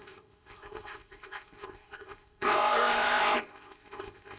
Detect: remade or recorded remade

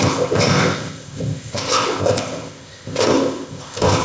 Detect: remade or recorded remade